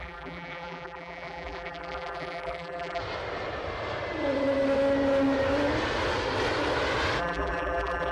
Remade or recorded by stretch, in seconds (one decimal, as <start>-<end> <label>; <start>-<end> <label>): 0.0-3.0 remade; 3.0-7.2 recorded; 7.2-8.1 remade

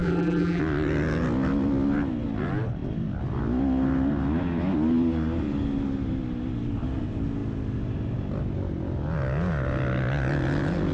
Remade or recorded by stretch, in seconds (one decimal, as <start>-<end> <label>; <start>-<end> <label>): 0.0-0.6 remade; 0.6-10.9 recorded